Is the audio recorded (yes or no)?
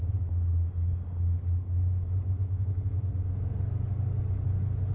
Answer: yes